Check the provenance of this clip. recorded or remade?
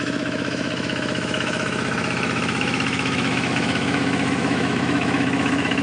remade